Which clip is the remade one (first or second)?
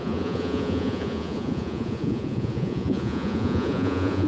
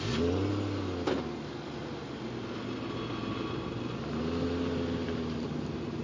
first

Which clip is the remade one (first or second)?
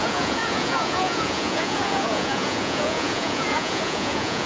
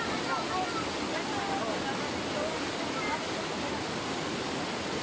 first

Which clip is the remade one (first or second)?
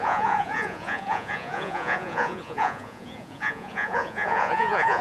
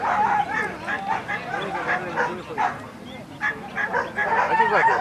first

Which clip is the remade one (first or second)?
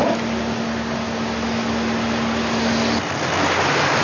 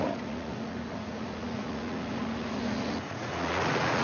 second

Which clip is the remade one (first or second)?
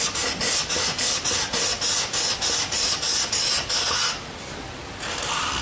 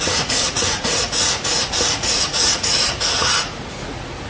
second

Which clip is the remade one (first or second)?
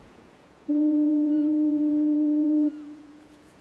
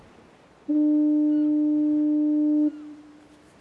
first